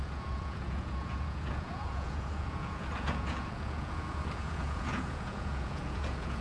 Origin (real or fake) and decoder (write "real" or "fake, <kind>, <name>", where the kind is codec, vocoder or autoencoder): fake, vocoder, Vocos